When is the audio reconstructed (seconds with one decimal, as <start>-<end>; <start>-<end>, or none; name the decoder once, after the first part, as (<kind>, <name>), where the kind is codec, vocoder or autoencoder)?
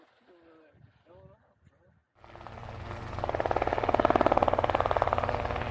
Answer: none